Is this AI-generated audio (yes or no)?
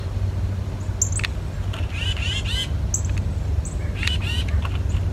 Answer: no